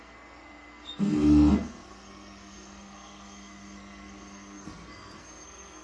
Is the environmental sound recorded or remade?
remade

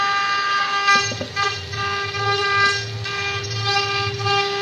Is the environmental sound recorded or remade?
recorded